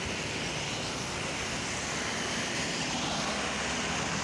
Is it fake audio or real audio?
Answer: real